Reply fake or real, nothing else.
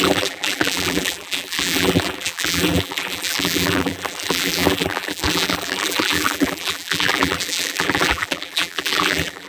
fake